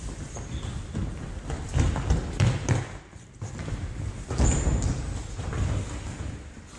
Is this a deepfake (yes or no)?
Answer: no